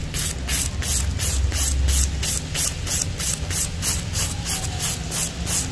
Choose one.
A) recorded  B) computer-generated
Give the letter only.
A